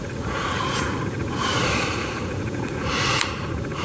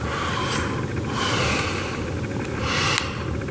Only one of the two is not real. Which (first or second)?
first